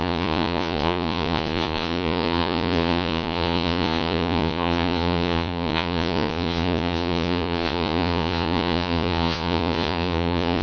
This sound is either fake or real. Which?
fake